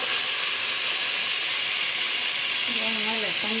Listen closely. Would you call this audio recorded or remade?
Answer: recorded